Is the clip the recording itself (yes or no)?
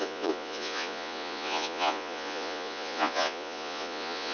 no